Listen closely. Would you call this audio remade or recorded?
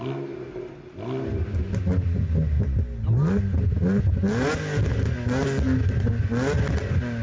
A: recorded